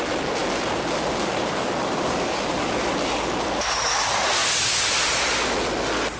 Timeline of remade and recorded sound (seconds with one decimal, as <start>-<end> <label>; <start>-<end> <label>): 0.0-0.4 remade; 0.4-1.3 recorded; 1.3-4.4 remade; 4.4-6.2 recorded